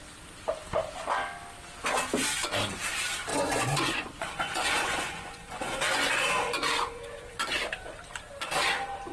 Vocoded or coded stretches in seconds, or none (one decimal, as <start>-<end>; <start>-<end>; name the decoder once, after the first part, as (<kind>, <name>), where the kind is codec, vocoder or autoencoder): 3.3-7.5 (vocoder, Vocos)